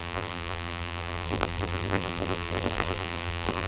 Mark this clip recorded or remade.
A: remade